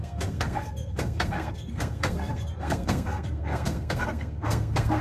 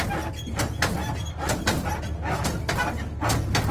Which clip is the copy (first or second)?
first